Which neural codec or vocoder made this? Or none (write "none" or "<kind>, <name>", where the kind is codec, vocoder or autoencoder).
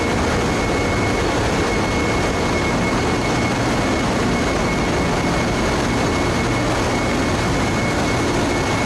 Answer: none